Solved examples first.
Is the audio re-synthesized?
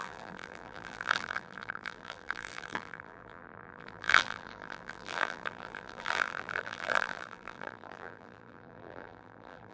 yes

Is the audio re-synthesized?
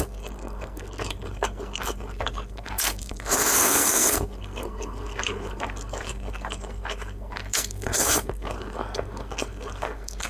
yes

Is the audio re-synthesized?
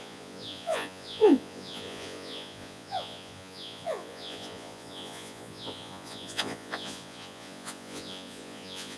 yes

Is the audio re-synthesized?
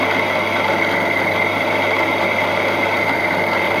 yes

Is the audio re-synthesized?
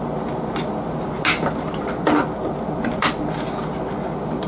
no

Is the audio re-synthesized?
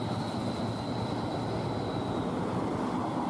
no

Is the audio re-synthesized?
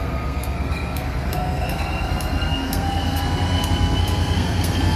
yes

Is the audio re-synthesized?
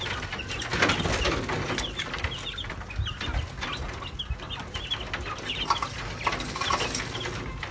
no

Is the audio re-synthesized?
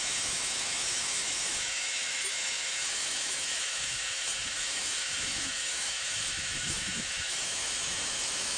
yes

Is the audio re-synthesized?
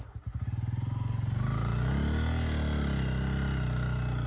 no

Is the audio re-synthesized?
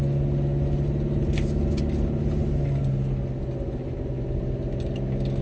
no